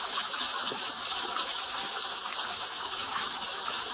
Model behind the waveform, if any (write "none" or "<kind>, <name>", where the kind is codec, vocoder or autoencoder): autoencoder, DAC-VAE